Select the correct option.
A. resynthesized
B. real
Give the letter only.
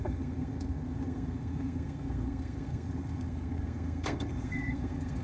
A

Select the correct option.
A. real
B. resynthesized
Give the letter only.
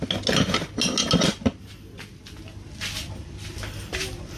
A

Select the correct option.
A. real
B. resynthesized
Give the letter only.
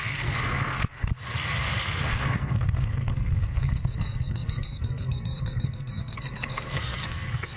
B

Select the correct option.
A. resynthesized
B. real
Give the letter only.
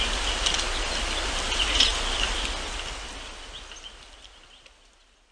B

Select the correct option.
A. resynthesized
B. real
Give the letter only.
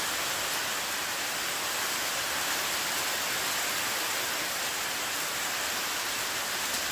B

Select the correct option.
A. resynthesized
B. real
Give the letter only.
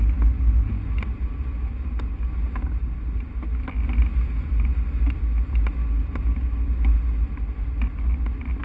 B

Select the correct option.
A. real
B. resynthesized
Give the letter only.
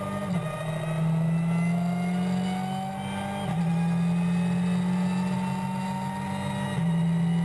A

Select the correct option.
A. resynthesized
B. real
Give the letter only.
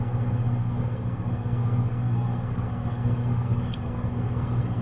A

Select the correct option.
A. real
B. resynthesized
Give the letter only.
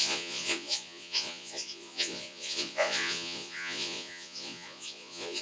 B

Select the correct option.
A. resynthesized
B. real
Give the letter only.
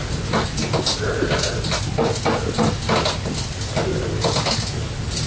B